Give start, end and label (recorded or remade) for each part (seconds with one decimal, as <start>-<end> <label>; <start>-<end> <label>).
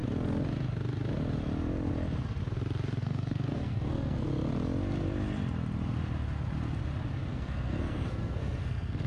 0.0-3.0 recorded; 3.0-4.3 remade; 4.3-7.3 recorded; 7.3-9.1 remade